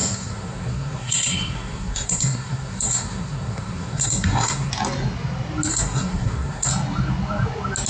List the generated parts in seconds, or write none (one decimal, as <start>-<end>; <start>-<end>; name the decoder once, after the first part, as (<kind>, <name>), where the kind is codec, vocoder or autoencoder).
0.0-4.7 (codec, SNAC); 5.7-6.7